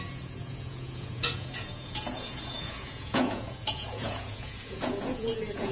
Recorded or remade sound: remade